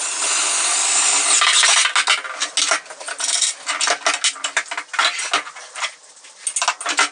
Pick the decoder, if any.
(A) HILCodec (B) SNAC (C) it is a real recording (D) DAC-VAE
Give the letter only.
C